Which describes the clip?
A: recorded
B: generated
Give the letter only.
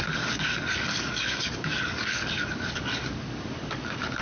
B